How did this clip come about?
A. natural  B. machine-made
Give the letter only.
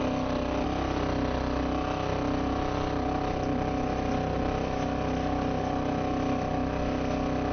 A